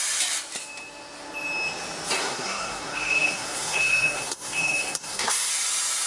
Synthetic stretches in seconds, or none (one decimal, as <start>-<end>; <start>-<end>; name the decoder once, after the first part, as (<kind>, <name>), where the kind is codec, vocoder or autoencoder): 2.2-5.5 (codec, SNAC)